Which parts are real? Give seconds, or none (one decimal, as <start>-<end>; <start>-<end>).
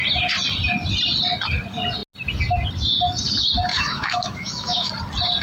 0.0-3.7; 4.9-5.4